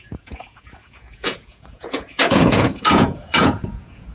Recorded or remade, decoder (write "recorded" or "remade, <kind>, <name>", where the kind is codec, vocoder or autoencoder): remade, vocoder, Vocos